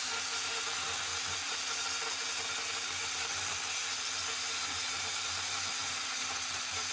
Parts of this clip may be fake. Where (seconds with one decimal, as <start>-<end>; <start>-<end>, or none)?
5.8-6.9